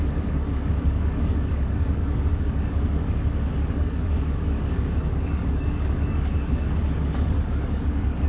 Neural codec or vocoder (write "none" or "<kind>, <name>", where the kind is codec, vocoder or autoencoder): codec, DAC